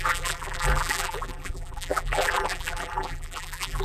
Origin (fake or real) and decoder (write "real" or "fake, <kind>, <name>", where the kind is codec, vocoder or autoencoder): fake, vocoder, BigVGAN v2